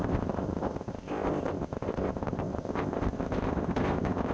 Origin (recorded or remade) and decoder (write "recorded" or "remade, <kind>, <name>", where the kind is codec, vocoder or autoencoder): remade, codec, ZipCodec